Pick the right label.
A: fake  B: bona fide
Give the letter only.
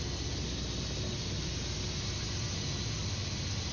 B